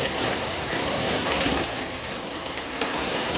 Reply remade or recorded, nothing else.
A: remade